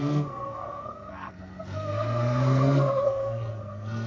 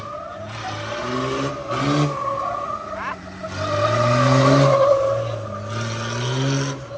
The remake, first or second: first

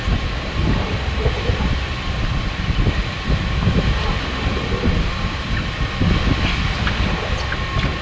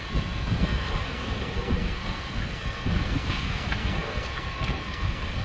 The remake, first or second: second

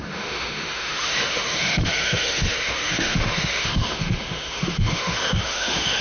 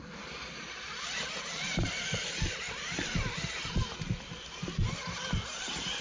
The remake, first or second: first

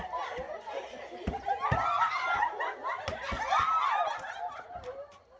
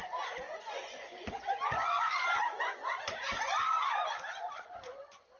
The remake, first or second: second